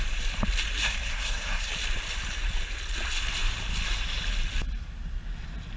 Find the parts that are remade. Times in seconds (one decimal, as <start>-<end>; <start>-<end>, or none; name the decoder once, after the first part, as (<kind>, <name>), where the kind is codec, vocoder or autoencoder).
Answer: 0.8-1.7 (codec, SNAC)